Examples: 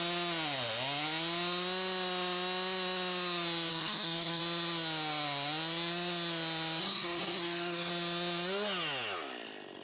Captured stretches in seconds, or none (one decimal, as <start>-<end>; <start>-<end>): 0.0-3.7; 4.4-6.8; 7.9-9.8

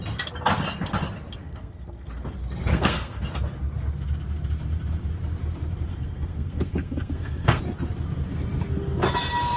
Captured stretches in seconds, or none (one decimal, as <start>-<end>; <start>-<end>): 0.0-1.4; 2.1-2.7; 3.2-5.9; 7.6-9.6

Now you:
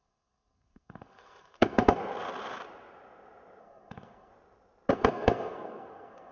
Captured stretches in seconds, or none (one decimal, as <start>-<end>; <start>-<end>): 2.0-3.6; 4.3-4.9

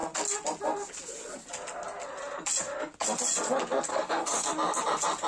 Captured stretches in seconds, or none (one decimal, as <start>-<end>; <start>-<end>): 0.0-3.9; 4.5-5.3